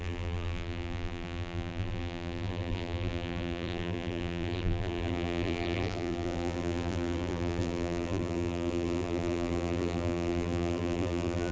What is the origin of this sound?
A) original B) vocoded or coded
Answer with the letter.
B